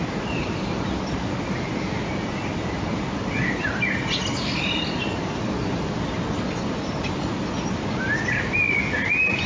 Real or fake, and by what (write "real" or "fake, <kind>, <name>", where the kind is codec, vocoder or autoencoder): real